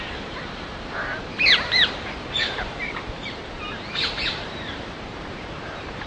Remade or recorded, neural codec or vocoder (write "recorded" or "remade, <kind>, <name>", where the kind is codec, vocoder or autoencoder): remade, vocoder, BigVGAN v2